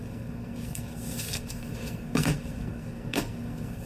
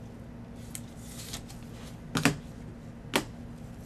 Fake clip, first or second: first